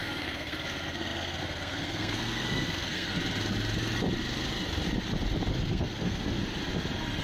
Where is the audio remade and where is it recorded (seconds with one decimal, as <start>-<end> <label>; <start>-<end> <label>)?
0.0-3.1 remade; 3.1-5.5 recorded; 5.5-6.4 remade; 6.4-7.2 recorded